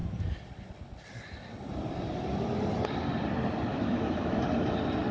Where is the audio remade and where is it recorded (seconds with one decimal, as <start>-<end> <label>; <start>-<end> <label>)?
0.0-3.7 recorded; 3.7-4.4 remade; 4.4-5.1 recorded